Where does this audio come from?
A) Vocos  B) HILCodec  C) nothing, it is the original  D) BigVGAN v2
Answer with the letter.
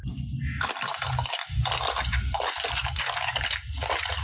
C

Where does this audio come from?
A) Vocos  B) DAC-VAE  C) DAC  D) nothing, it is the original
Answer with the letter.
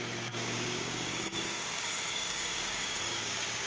C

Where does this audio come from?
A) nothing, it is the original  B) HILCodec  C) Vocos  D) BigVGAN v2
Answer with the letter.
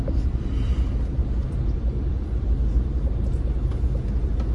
A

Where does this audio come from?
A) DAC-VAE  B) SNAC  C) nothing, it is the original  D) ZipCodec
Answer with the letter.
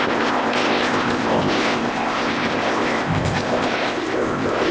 D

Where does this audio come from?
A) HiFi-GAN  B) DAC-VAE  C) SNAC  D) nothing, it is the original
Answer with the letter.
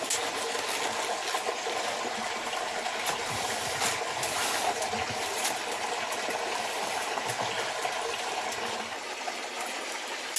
D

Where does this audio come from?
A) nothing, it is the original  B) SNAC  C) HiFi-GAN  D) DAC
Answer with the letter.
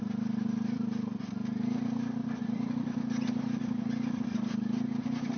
A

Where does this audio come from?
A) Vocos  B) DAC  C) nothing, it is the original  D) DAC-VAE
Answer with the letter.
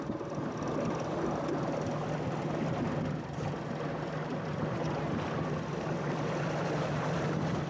C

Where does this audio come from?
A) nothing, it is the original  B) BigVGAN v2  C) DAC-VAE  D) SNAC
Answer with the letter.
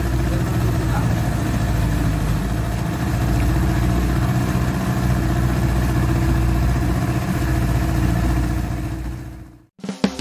A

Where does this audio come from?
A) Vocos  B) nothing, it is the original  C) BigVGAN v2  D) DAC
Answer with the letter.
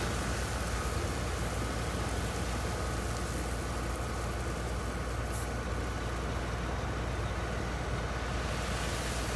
B